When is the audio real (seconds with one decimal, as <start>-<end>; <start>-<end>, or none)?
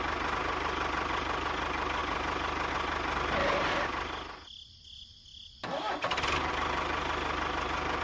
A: 0.0-8.0